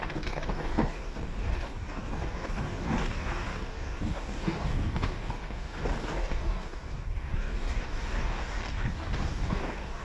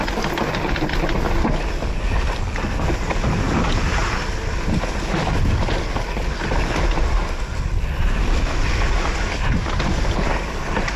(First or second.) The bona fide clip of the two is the second